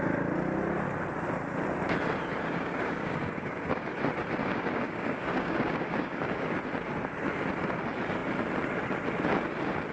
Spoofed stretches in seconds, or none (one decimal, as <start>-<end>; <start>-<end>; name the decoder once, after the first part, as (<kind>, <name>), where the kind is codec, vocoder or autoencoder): 2.4-3.9 (codec, DAC); 4.4-6.6